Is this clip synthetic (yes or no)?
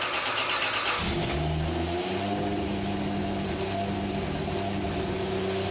no